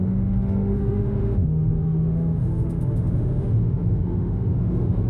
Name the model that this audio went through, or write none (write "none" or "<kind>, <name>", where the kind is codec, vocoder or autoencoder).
autoencoder, DAC-VAE